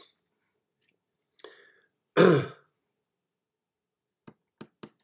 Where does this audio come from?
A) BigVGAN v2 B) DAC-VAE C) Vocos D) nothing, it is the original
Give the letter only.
D